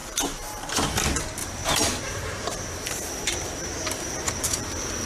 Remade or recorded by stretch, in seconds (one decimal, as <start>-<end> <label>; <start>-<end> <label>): 0.0-0.9 remade; 0.9-1.4 recorded; 1.4-4.3 remade; 4.3-5.1 recorded